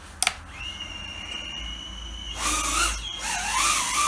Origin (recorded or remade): recorded